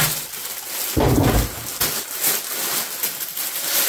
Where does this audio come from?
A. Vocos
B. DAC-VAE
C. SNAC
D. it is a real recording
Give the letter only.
D